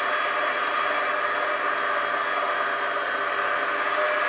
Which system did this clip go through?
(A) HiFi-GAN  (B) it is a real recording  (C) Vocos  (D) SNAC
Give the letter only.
B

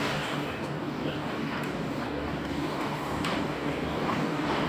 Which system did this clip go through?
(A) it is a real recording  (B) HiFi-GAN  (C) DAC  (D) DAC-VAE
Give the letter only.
C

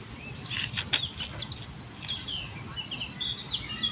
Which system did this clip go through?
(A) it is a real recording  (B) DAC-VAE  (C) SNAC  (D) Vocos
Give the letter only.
A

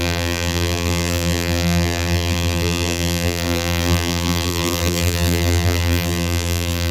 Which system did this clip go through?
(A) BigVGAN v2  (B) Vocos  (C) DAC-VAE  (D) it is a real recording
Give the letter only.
A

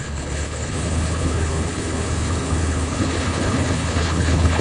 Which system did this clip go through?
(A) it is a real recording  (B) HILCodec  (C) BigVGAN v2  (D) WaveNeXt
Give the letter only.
B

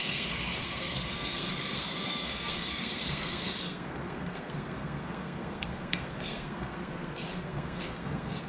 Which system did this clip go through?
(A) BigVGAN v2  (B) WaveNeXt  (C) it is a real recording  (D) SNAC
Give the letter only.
D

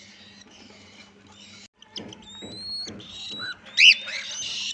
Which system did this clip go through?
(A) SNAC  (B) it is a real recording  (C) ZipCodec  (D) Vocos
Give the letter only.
B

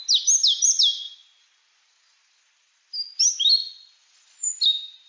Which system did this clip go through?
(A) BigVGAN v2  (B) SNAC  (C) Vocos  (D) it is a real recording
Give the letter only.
D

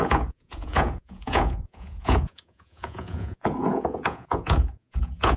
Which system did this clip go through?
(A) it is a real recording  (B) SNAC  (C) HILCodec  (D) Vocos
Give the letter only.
D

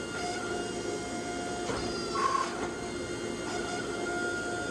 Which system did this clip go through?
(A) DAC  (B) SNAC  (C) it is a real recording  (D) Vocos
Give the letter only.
C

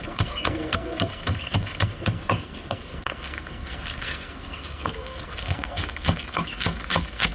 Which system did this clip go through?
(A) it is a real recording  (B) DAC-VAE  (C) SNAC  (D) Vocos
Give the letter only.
C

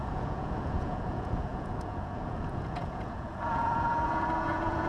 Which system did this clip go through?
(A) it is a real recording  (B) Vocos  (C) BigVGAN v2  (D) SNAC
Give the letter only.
B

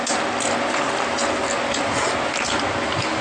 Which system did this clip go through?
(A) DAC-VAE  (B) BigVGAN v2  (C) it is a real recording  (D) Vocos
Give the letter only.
C